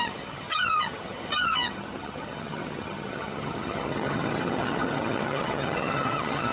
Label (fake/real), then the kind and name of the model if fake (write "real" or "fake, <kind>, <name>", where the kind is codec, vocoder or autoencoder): fake, vocoder, HiFi-GAN